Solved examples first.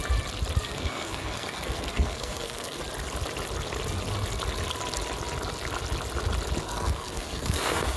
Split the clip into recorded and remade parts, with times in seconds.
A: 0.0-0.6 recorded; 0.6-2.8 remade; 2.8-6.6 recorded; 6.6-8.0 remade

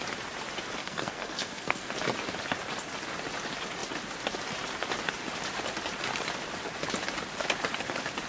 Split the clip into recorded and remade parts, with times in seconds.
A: 0.0-0.8 recorded; 0.8-1.9 remade; 1.9-8.3 recorded

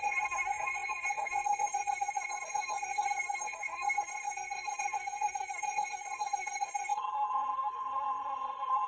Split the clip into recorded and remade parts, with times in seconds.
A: 0.0-8.9 remade

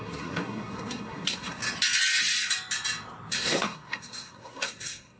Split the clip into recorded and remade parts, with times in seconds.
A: 0.0-1.6 remade; 1.6-3.3 recorded; 3.3-5.2 remade

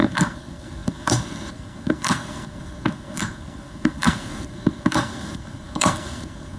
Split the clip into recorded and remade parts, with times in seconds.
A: 0.0-6.6 remade